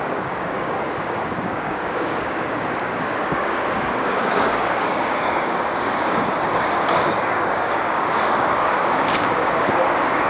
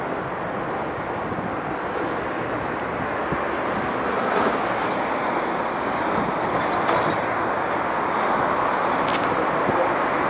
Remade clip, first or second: first